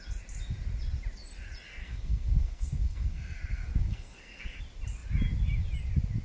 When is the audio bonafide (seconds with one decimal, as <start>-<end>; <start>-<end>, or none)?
0.0-1.7; 4.6-6.2